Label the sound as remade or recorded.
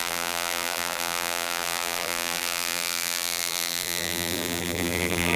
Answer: remade